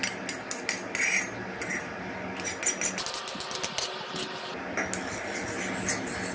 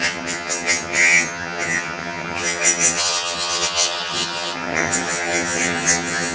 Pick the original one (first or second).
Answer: first